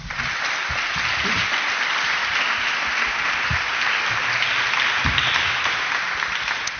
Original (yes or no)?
yes